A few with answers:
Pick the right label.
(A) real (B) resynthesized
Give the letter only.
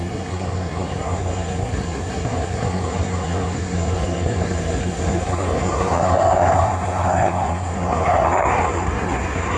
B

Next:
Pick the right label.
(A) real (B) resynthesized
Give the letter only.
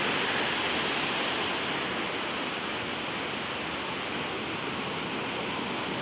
A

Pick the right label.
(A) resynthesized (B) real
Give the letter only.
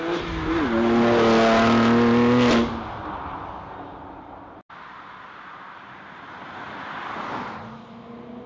B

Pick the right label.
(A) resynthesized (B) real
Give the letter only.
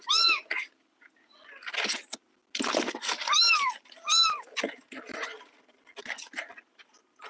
B